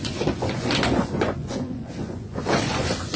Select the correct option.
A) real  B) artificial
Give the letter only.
B